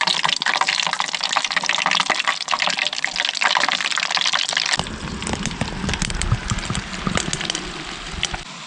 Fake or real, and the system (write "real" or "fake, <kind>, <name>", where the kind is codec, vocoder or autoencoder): real